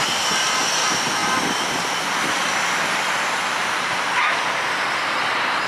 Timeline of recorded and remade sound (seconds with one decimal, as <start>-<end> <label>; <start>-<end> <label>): 0.0-5.7 remade